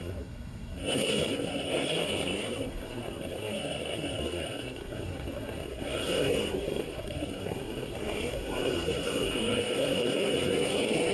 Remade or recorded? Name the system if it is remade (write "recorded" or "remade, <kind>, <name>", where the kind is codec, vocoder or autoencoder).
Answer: remade, codec, SNAC